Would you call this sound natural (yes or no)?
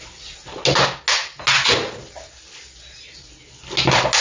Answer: yes